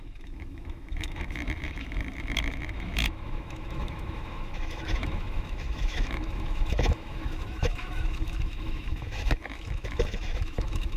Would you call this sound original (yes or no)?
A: no